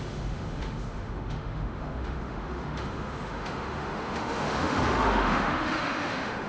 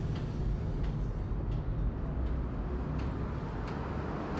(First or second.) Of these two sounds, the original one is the second